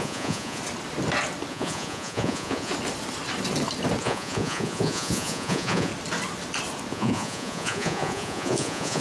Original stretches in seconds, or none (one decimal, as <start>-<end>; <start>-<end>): 0.6-1.5; 2.7-4.0; 5.9-6.9